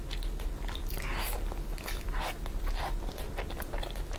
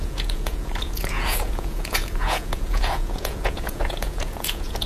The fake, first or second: second